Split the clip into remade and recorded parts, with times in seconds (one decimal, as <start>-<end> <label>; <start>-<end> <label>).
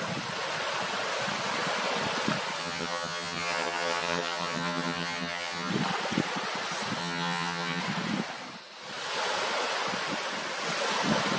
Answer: 0.0-2.6 recorded; 2.6-5.7 remade; 5.7-7.0 recorded; 7.0-7.8 remade; 7.8-11.4 recorded